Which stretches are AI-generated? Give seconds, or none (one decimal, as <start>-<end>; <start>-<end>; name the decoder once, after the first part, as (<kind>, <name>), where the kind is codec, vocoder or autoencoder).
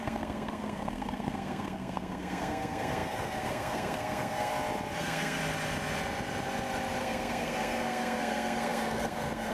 0.0-4.5 (codec, SNAC); 5.0-5.4; 7.0-9.5